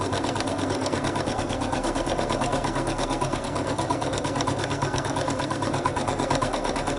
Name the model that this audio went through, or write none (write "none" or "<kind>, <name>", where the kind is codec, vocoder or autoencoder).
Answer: codec, SNAC